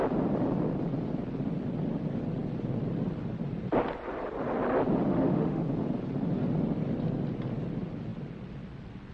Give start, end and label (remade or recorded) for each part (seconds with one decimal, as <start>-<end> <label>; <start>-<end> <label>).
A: 0.0-5.1 recorded; 5.1-5.6 remade; 5.6-9.1 recorded